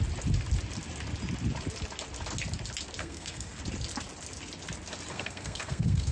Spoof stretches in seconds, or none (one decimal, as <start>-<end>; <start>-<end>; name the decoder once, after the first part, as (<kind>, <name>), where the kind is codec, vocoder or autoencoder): 3.0-3.6 (codec, SNAC); 5.1-6.1

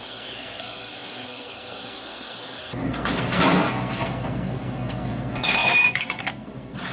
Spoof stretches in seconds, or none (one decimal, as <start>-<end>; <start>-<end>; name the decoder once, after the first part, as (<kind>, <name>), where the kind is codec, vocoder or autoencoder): 0.0-6.9 (codec, SNAC)